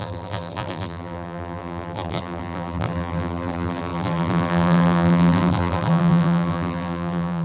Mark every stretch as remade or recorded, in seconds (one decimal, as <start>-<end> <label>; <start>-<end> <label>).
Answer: 0.0-7.4 remade